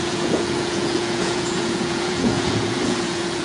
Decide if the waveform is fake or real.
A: fake